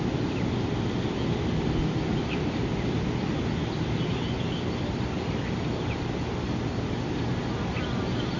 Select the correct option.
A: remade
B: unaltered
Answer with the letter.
B